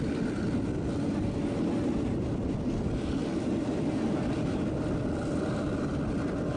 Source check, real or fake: real